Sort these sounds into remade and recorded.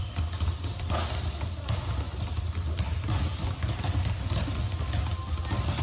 recorded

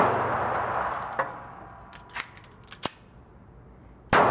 recorded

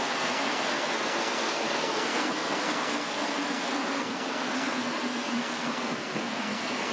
remade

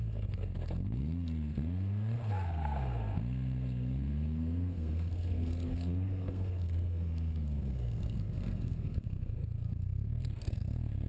remade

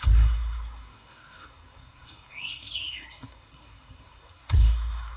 remade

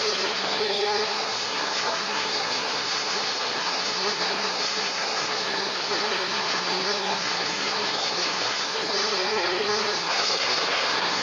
remade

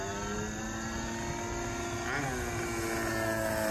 recorded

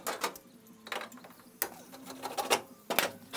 recorded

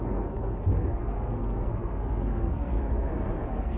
remade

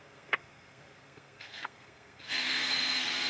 remade